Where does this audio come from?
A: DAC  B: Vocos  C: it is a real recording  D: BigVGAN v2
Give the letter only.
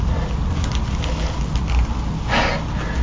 C